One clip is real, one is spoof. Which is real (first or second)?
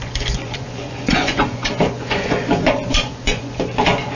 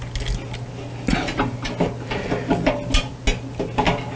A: second